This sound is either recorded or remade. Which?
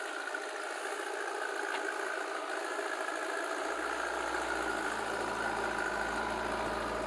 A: recorded